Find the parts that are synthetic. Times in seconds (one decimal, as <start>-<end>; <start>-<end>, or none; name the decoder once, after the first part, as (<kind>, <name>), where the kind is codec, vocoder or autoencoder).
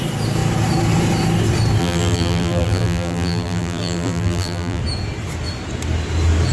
1.8-4.8 (vocoder, BigVGAN v2)